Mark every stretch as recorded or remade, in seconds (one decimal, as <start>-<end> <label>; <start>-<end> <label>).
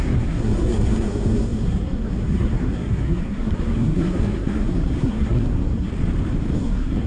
0.0-5.9 remade; 5.9-6.6 recorded; 6.6-7.1 remade